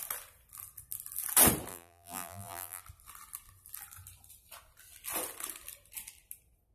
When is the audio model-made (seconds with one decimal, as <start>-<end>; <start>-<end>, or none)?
1.7-2.8